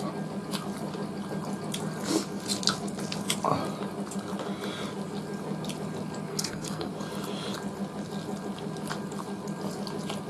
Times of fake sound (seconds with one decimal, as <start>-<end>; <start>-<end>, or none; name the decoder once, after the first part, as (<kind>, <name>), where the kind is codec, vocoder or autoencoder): 6.3-6.9 (codec, SNAC)